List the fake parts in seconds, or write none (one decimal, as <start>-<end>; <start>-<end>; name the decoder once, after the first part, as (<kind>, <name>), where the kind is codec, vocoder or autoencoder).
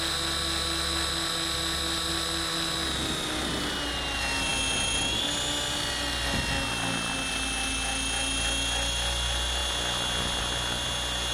none